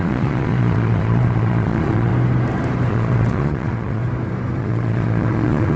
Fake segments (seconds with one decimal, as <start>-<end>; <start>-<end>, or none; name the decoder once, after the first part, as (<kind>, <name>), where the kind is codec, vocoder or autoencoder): 0.0-2.1 (vocoder, Vocos); 2.9-4.0; 4.6-5.8